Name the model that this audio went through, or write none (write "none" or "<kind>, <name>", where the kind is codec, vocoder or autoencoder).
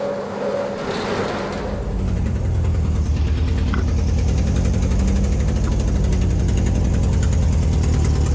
none